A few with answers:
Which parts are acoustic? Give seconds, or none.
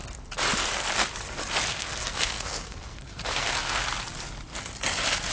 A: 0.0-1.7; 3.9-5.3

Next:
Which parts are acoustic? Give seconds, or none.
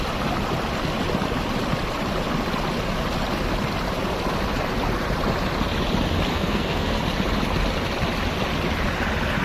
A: 0.0-6.3; 7.0-9.4